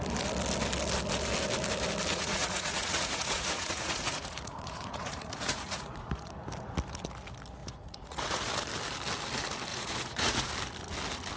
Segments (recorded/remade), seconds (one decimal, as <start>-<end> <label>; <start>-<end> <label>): 0.0-2.1 recorded; 2.1-6.3 remade; 6.3-7.6 recorded; 7.6-8.5 remade; 8.5-9.7 recorded; 9.7-10.5 remade; 10.5-11.4 recorded